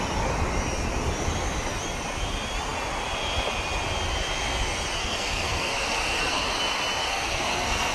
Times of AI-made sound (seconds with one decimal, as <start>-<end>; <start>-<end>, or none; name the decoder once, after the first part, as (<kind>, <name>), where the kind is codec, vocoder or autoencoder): 5.0-6.4 (codec, SNAC); 7.0-7.9